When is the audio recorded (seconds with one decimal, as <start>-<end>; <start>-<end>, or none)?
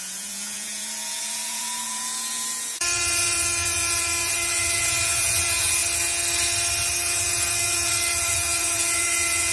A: 5.8-7.0